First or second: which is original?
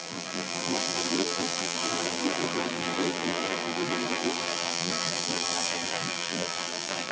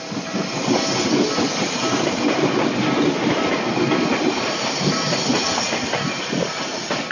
second